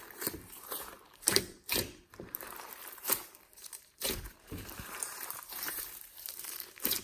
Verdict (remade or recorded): remade